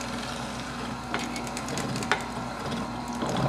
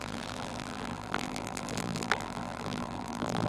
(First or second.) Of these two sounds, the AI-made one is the second